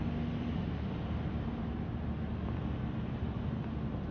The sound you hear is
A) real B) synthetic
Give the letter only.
A